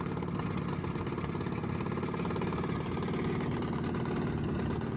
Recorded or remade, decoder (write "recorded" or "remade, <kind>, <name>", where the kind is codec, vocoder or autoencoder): recorded